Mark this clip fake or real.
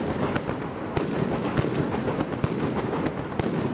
real